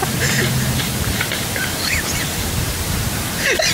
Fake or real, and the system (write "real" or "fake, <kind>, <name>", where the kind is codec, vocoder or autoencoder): fake, vocoder, BigVGAN v2